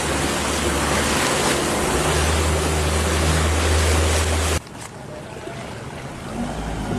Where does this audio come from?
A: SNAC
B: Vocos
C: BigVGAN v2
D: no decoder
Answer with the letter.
D